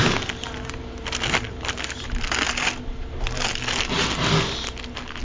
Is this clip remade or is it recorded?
recorded